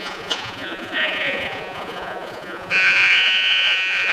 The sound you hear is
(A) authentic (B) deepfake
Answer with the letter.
B